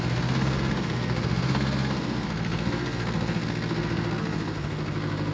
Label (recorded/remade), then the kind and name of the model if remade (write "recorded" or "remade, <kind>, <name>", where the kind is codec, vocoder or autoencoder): remade, codec, SNAC